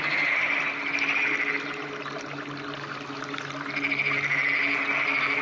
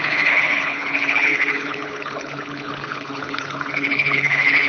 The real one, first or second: first